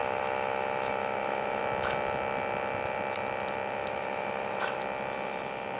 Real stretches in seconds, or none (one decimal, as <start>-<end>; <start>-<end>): 1.6-3.8; 4.8-5.8